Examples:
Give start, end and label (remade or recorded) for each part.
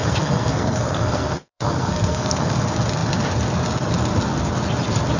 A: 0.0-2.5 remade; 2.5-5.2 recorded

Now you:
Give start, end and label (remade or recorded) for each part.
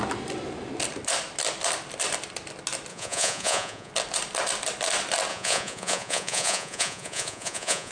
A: 0.0-2.9 recorded; 2.9-3.9 remade; 3.9-5.3 recorded; 5.3-7.9 remade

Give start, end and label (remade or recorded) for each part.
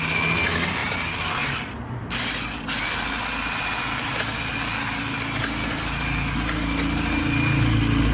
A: 0.0-8.1 recorded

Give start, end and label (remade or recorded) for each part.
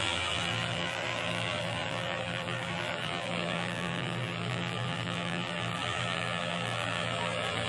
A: 0.0-7.7 remade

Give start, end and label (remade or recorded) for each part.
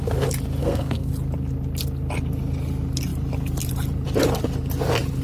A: 0.0-0.6 recorded; 0.6-1.1 remade; 1.1-5.2 recorded